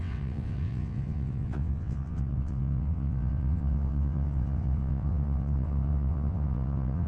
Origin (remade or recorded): remade